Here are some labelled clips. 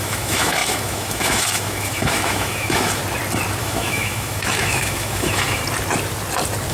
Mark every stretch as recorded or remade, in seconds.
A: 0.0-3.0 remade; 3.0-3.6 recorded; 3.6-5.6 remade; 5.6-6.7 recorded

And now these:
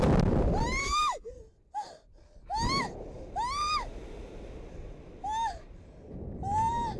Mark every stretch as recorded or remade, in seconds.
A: 0.0-0.8 recorded; 0.8-1.3 remade; 1.3-7.0 recorded

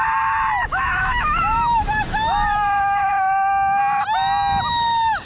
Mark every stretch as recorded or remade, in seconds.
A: 0.0-0.6 recorded; 0.6-3.8 remade; 3.8-5.3 recorded

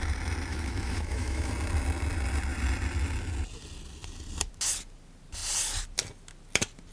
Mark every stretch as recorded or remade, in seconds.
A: 0.0-0.5 recorded; 0.5-1.5 remade; 1.5-6.9 recorded

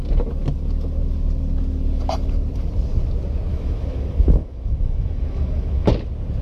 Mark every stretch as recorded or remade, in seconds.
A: 0.0-3.5 recorded; 3.5-5.9 remade; 5.9-6.4 recorded